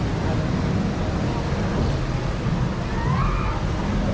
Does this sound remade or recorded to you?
recorded